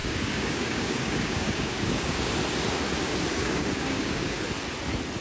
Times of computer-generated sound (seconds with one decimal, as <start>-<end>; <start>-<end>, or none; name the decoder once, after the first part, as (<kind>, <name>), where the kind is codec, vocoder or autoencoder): 0.0-2.3 (codec, DAC); 3.4-4.4